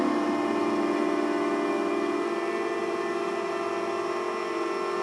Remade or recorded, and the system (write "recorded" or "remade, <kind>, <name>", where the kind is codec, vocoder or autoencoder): recorded